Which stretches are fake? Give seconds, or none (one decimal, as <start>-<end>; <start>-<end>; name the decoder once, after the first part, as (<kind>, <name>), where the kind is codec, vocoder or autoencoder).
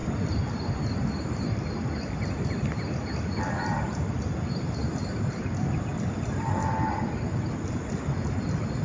none